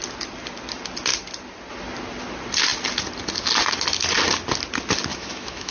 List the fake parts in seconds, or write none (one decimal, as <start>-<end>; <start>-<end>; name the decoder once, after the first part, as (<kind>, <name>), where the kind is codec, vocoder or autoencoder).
5.1-5.7 (autoencoder, DAC-VAE)